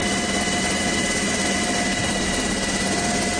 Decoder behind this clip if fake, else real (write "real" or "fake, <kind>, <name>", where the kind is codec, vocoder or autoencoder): real